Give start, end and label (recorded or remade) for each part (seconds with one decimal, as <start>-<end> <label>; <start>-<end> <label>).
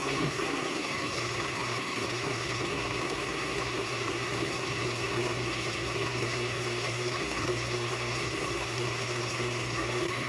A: 0.0-10.3 remade